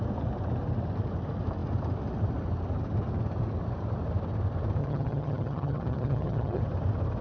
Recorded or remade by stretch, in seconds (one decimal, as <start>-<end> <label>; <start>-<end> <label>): 0.0-4.8 recorded; 4.8-6.6 remade; 6.6-7.2 recorded